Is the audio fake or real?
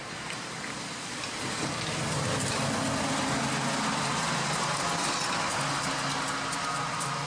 real